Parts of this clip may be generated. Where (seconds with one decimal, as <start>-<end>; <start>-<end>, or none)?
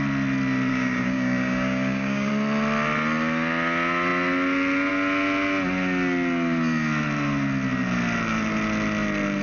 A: 0.7-2.3